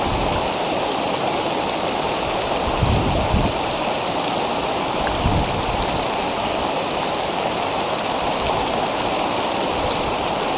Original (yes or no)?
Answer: yes